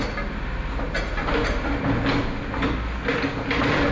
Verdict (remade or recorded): recorded